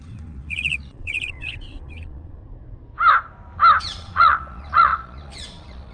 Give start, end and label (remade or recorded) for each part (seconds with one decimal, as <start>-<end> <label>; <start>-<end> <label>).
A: 0.0-2.4 remade; 2.4-3.8 recorded; 3.8-5.9 remade